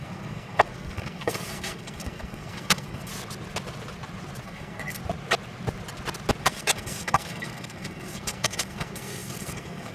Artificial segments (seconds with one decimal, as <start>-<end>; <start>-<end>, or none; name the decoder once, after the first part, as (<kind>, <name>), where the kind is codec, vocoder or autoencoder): 0.0-3.1 (codec, SNAC); 4.4-5.0; 6.4-9.9